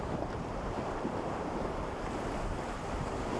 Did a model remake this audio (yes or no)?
yes